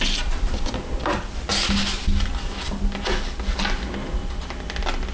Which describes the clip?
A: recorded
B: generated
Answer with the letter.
A